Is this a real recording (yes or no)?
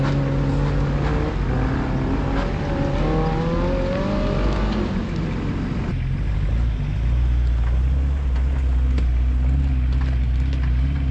yes